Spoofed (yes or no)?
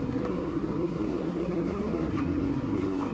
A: yes